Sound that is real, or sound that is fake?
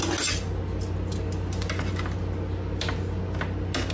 real